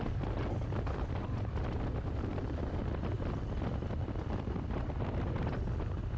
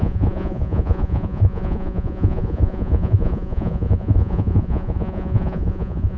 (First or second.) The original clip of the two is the first